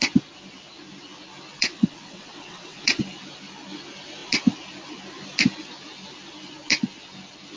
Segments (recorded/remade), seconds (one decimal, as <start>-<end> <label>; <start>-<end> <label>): 0.0-1.6 recorded; 1.6-3.0 remade; 3.0-7.6 recorded

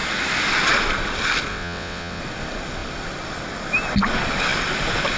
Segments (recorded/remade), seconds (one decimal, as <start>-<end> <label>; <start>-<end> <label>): 0.0-1.5 recorded; 1.5-2.2 remade; 2.2-5.2 recorded

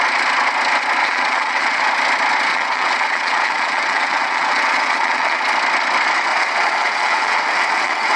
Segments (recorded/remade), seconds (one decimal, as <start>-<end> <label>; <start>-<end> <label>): 0.0-1.0 recorded; 1.0-1.8 remade; 1.8-2.5 recorded; 2.5-5.4 remade; 5.4-6.3 recorded; 6.3-8.2 remade